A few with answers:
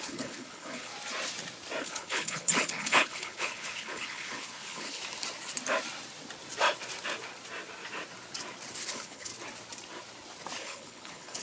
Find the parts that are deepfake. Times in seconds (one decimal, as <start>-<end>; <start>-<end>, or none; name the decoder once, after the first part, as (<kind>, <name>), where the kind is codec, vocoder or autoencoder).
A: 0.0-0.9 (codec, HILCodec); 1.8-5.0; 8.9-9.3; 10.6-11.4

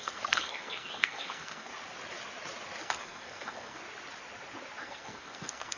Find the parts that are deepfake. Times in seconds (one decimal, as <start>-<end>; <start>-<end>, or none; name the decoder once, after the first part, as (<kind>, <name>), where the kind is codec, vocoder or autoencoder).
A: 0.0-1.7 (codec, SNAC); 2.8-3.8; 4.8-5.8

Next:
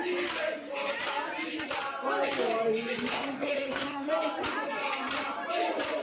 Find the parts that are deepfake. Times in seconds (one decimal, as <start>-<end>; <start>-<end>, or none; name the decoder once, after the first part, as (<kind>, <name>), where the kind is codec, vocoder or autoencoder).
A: 3.1-4.1 (codec, SNAC)